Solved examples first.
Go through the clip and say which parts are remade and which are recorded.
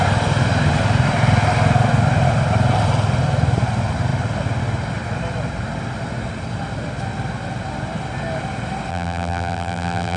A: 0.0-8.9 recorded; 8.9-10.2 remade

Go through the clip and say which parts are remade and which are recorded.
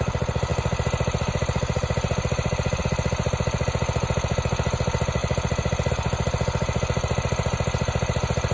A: 0.0-8.5 recorded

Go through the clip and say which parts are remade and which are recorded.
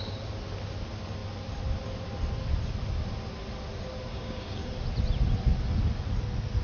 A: 0.0-4.1 recorded; 4.1-4.7 remade; 4.7-6.6 recorded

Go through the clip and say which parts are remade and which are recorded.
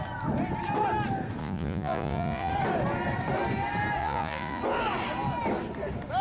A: 0.0-1.4 recorded; 1.4-2.5 remade; 2.5-4.0 recorded; 4.0-4.6 remade; 4.6-6.2 recorded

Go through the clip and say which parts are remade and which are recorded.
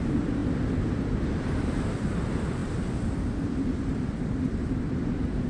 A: 0.0-0.4 remade; 0.4-1.6 recorded; 1.6-5.5 remade